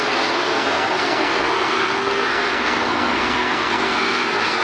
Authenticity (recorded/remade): remade